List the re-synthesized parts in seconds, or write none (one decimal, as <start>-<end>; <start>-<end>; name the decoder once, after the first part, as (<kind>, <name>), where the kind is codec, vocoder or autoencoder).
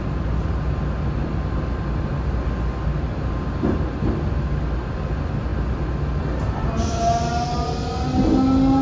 none